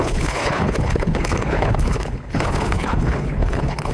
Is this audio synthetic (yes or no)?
yes